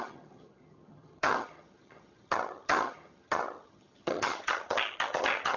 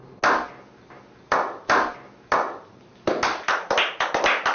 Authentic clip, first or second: second